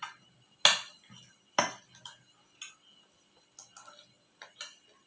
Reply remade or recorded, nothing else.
recorded